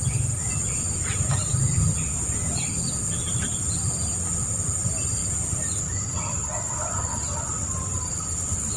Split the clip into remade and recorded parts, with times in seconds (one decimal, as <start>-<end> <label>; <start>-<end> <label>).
0.0-8.8 recorded